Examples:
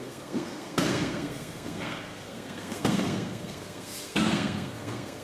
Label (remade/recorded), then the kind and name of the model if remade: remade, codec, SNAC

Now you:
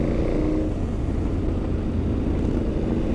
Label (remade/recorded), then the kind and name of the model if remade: recorded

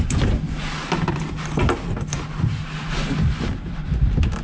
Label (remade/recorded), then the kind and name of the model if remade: recorded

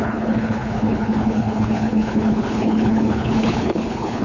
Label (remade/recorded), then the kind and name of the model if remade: remade, codec, HILCodec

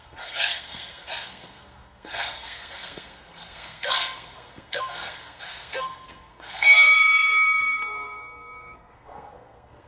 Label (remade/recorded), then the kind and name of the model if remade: remade, codec, SNAC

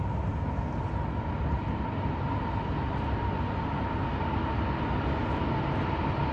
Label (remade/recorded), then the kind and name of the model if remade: recorded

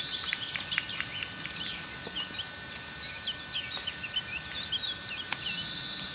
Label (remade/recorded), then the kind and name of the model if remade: recorded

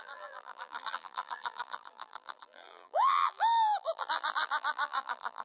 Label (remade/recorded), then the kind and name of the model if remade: remade, vocoder, BigVGAN v2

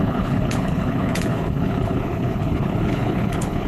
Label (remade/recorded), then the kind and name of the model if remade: remade, codec, HILCodec